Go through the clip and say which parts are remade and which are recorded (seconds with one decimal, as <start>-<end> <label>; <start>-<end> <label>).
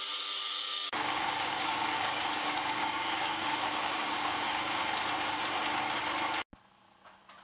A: 0.0-0.4 recorded; 0.4-4.8 remade; 4.8-7.4 recorded